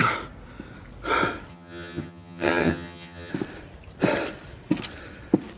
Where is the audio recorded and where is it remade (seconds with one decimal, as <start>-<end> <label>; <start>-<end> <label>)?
0.0-1.5 recorded; 1.5-3.3 remade; 3.3-5.6 recorded